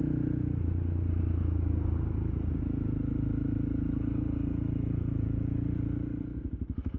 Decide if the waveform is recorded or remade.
recorded